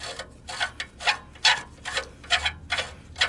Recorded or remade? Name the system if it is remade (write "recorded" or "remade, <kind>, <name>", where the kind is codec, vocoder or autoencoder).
recorded